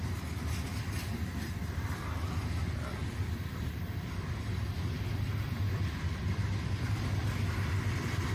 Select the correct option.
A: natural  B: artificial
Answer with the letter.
B